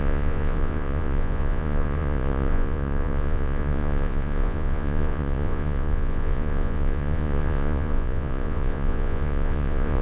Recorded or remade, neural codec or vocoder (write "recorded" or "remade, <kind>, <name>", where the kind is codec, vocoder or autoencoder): remade, vocoder, Vocos